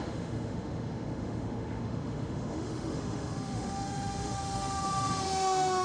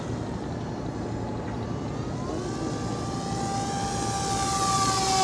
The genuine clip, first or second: second